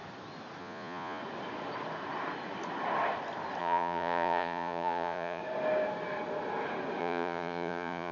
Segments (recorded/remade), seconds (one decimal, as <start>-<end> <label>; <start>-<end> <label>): 0.0-0.6 recorded; 0.6-1.2 remade; 1.2-3.6 recorded; 3.6-5.4 remade; 5.4-7.0 recorded; 7.0-8.1 remade